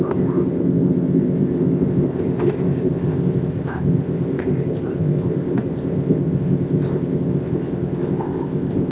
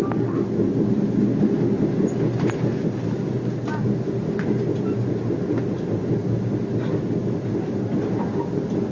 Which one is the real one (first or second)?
second